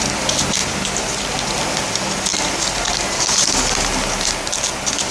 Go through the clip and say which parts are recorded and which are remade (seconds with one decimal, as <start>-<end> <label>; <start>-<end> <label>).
0.0-2.3 recorded; 2.3-3.5 remade; 3.5-5.1 recorded